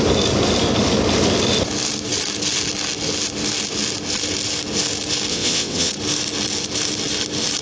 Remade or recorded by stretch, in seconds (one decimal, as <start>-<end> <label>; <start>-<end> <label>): 0.0-5.3 recorded; 5.3-5.9 remade; 5.9-7.6 recorded